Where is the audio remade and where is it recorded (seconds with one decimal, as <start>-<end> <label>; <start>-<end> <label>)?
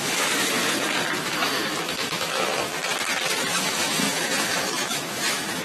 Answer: 0.0-0.6 remade; 0.6-1.2 recorded; 1.2-2.9 remade; 2.9-3.5 recorded; 3.5-5.6 remade